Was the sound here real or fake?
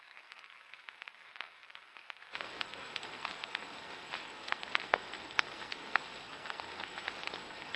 fake